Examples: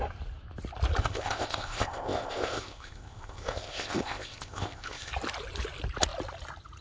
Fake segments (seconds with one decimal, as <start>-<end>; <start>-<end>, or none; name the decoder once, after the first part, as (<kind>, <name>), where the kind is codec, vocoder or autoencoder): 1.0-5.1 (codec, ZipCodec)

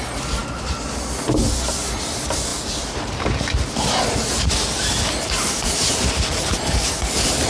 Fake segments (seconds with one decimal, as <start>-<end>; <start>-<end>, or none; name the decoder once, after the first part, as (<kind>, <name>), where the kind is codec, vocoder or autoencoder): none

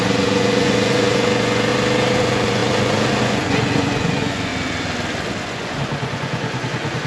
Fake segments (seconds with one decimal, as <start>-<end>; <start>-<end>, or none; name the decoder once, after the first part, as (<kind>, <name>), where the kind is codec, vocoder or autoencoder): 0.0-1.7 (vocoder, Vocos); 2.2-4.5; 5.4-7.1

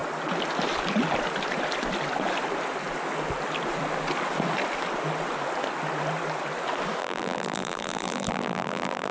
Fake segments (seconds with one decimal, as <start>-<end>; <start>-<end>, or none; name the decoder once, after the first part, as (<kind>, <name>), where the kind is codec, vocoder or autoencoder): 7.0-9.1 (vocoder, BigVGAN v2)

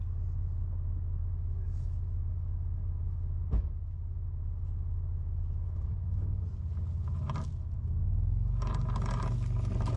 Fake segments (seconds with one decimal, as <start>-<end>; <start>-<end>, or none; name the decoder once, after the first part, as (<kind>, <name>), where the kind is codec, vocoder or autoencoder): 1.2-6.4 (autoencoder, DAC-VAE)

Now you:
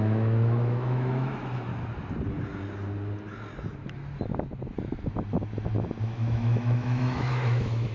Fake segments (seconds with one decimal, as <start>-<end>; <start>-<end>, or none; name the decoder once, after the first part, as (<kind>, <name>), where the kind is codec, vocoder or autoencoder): 0.0-1.7 (autoencoder, DAC-VAE); 6.0-7.9